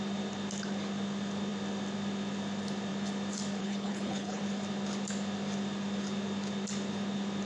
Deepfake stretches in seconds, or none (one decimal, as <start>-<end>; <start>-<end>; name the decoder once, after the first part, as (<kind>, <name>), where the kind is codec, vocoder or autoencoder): 3.6-4.4 (codec, HILCodec)